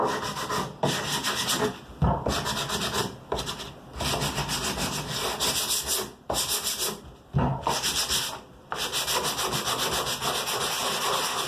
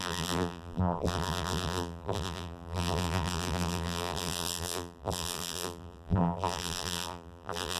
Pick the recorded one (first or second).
first